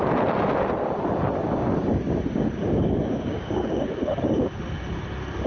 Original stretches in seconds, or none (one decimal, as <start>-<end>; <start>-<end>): 0.0-1.4; 4.5-5.5